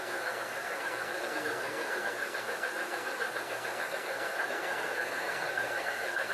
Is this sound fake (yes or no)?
yes